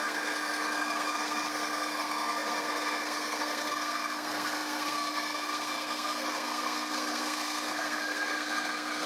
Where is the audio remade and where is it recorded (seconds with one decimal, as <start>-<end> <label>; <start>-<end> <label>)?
0.0-9.1 remade